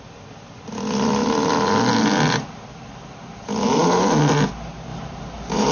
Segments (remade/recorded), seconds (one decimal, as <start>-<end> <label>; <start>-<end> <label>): 0.0-4.9 recorded; 4.9-5.7 remade